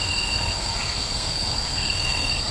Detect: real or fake fake